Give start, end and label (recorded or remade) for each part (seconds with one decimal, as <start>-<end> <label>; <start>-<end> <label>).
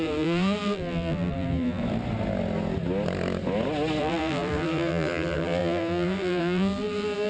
0.0-1.8 remade; 1.8-4.0 recorded; 4.0-7.3 remade